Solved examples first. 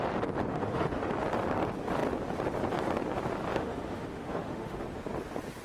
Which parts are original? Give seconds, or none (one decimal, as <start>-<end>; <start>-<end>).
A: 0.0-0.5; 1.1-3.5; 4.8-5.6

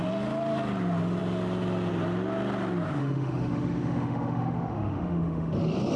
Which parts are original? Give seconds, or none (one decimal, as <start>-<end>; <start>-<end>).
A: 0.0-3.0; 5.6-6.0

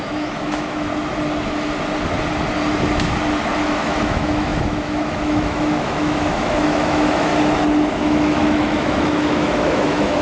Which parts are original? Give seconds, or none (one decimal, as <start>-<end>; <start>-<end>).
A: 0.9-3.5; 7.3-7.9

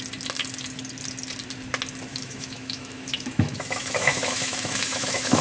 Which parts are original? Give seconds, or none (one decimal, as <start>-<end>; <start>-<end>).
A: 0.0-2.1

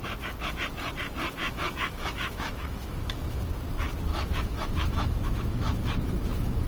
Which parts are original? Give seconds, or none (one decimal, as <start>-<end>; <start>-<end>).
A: 0.0-1.4; 3.4-4.1

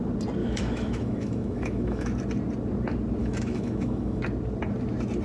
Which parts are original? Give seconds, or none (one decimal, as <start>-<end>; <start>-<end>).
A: 0.0-0.4; 2.1-3.2; 4.2-5.2